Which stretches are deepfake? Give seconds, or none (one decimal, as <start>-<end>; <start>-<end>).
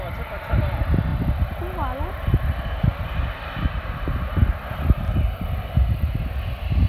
none